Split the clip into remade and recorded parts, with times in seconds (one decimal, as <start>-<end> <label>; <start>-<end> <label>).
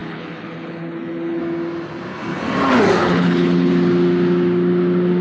0.0-1.4 remade; 1.4-3.0 recorded; 3.0-3.7 remade; 3.7-5.2 recorded